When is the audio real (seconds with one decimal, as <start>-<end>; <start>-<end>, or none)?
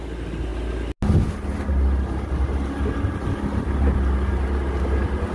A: 0.0-5.3